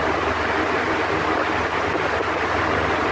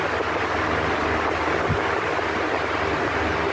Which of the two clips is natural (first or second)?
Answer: second